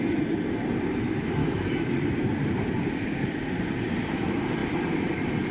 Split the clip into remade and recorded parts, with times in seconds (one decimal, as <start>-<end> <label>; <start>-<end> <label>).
0.0-1.4 recorded; 1.4-1.9 remade; 1.9-5.5 recorded

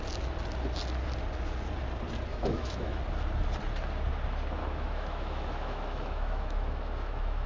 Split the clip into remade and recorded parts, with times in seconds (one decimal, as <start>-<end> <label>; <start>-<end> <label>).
0.0-2.3 recorded; 2.3-3.0 remade; 3.0-4.6 recorded; 4.6-7.5 remade